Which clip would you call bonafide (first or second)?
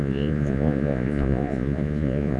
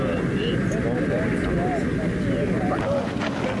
second